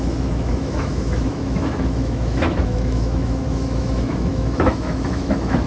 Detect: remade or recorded remade